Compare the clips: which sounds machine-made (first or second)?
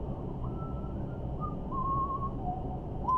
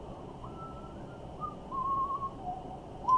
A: second